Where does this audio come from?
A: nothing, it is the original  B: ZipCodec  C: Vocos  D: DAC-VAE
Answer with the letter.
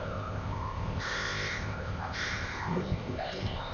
B